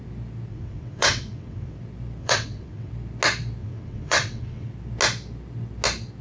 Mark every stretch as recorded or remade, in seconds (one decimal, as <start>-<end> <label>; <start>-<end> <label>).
0.0-0.5 recorded; 0.5-1.8 remade; 1.8-2.2 recorded; 2.2-2.9 remade; 2.9-3.6 recorded; 3.6-4.7 remade; 4.7-6.2 recorded